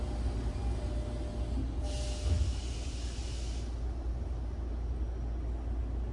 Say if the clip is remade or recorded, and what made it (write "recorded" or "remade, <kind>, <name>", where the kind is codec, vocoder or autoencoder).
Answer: recorded